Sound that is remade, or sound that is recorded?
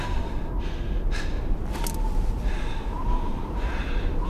recorded